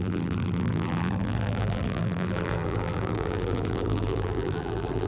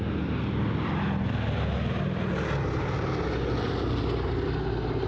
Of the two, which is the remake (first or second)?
first